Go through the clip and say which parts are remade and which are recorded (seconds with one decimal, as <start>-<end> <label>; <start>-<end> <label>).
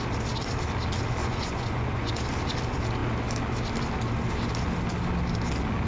0.0-1.2 recorded; 1.2-2.1 remade; 2.1-5.9 recorded